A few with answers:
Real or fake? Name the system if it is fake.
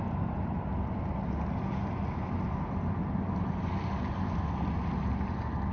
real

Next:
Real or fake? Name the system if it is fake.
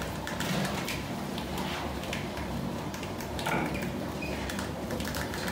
fake, vocoder, BigVGAN v2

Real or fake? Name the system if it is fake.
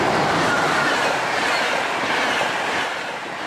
fake, vocoder, BigVGAN v2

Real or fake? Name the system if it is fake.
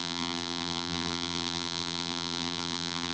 fake, vocoder, BigVGAN v2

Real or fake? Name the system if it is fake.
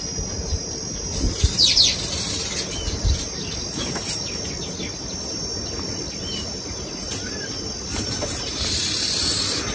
fake, vocoder, BigVGAN v2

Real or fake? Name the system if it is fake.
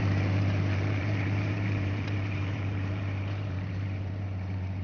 fake, vocoder, BigVGAN v2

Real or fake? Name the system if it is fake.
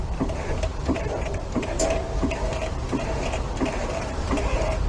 fake, vocoder, BigVGAN v2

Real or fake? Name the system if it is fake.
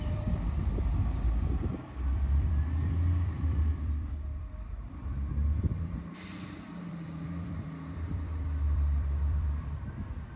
fake, vocoder, BigVGAN v2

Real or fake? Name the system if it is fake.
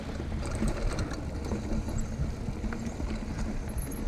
real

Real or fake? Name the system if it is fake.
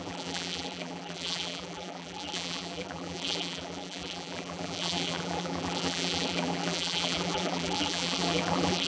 fake, vocoder, BigVGAN v2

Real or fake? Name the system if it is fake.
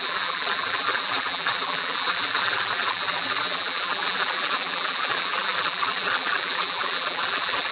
fake, vocoder, BigVGAN v2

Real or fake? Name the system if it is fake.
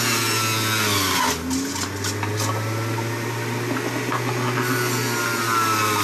real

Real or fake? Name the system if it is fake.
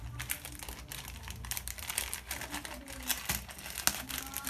real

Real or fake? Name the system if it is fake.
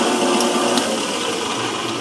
fake, vocoder, BigVGAN v2